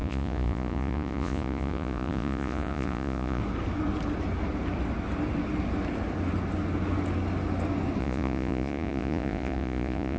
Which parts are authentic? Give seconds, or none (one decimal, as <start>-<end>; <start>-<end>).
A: 3.4-8.0